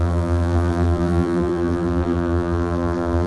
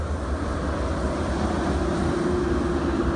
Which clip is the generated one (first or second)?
first